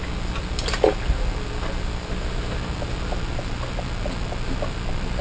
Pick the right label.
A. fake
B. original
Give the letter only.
B